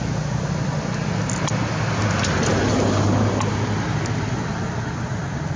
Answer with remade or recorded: recorded